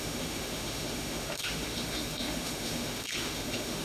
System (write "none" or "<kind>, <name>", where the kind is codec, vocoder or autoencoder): autoencoder, DAC-VAE